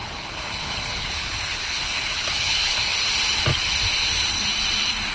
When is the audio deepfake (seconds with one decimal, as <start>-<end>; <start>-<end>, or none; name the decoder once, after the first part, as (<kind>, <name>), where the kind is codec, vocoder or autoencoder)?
0.0-3.1 (codec, HILCodec)